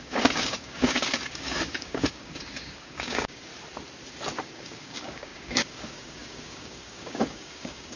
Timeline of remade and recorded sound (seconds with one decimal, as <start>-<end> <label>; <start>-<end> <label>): 0.0-3.5 remade; 3.5-4.4 recorded; 4.4-8.0 remade